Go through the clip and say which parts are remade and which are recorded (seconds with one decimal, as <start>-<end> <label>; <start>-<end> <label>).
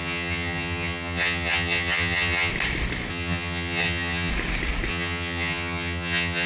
0.0-2.5 remade; 2.5-3.1 recorded; 3.1-4.3 remade; 4.3-4.9 recorded; 4.9-6.5 remade